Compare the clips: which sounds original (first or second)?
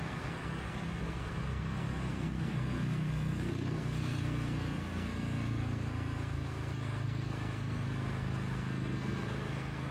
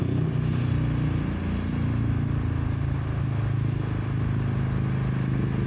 second